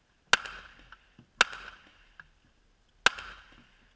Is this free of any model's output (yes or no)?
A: yes